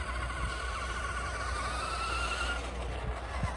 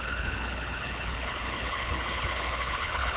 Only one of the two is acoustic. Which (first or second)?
first